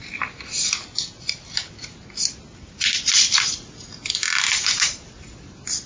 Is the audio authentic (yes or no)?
yes